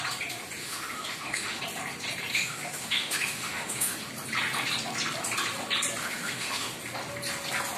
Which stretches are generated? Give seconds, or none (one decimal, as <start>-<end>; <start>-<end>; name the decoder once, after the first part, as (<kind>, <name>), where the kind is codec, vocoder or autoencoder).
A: 0.6-1.6 (autoencoder, DAC-VAE); 2.3-4.1; 6.0-6.8